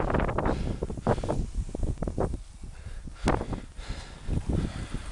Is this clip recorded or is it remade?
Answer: recorded